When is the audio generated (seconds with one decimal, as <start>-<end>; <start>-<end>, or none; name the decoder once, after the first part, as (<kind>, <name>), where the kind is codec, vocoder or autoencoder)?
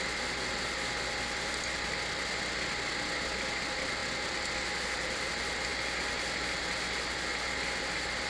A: none